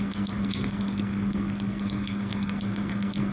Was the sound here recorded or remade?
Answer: remade